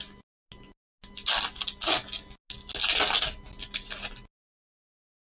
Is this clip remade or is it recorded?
recorded